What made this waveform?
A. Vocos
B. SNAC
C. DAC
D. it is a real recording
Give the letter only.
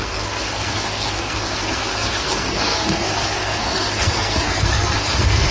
B